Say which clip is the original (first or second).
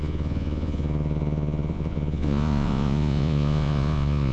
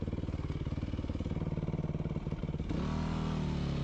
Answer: second